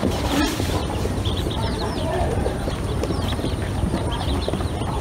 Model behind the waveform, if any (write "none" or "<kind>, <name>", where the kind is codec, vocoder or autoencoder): vocoder, BigVGAN v2